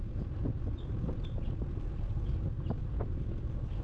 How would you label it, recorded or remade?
recorded